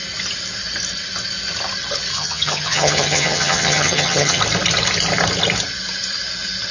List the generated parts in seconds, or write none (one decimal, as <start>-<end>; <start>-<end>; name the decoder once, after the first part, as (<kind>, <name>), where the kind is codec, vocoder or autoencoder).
2.1-4.4 (vocoder, HiFi-GAN)